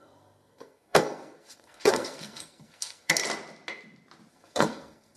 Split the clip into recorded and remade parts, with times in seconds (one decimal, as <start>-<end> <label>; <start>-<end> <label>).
0.0-3.2 remade; 3.2-4.3 recorded; 4.3-5.2 remade